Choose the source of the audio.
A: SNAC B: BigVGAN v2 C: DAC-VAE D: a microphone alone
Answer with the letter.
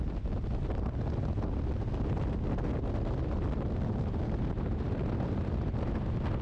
D